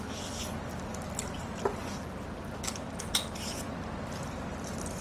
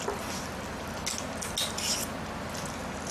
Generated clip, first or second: first